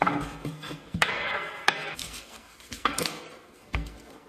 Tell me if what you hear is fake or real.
fake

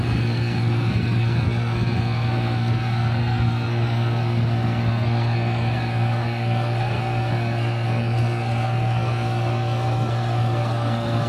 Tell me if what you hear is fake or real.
fake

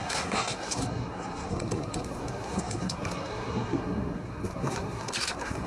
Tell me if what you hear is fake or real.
fake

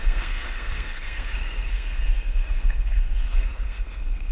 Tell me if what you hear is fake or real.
fake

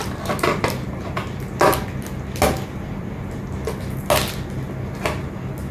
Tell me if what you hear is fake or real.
real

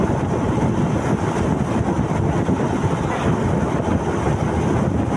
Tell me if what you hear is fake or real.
real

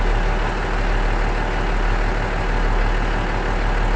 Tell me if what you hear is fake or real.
real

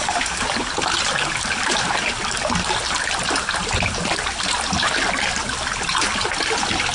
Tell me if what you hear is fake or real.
real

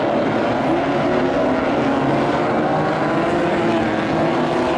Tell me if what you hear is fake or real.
real